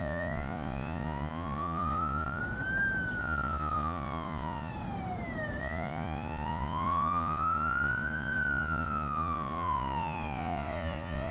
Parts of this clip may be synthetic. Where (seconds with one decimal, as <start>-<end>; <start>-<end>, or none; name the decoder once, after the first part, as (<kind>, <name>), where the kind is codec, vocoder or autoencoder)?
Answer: 0.0-2.4 (vocoder, Vocos); 3.2-4.7; 5.6-11.3